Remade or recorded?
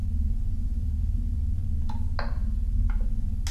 recorded